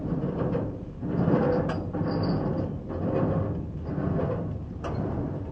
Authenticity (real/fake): real